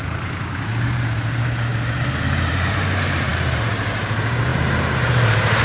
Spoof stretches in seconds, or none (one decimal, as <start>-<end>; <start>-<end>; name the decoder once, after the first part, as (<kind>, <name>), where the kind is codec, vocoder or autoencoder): 0.0-1.7 (vocoder, BigVGAN v2); 2.5-5.6